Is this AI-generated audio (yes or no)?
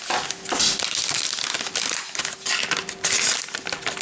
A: no